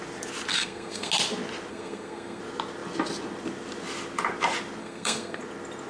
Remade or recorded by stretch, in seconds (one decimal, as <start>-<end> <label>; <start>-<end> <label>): 0.0-0.5 recorded; 0.5-1.1 remade; 1.1-1.7 recorded; 1.7-2.4 remade; 2.4-4.8 recorded; 4.8-5.4 remade; 5.4-5.9 recorded